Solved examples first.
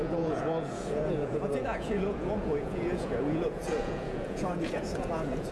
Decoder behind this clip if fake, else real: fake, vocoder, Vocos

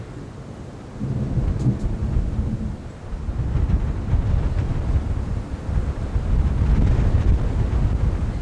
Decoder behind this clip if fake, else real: real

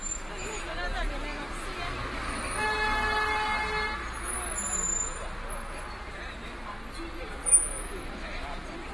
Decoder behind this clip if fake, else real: real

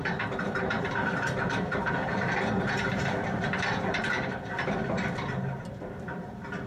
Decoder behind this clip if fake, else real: fake, vocoder, BigVGAN v2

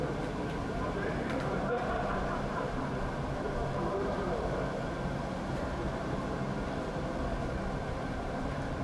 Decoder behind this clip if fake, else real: fake, vocoder, BigVGAN v2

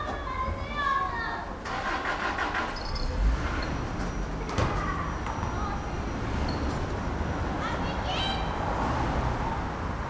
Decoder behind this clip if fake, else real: real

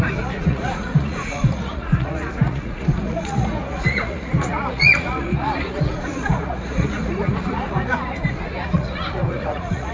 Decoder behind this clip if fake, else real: fake, vocoder, Vocos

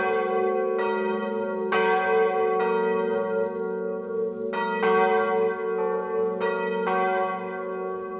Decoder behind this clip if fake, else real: real